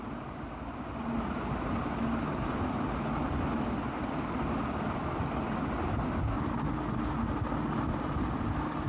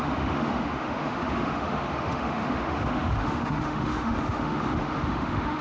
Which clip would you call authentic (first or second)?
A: first